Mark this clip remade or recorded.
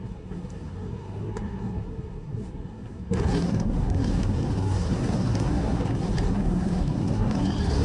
remade